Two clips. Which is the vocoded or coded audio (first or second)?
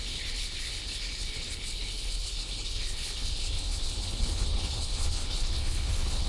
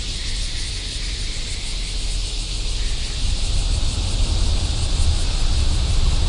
first